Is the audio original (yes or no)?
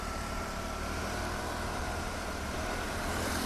no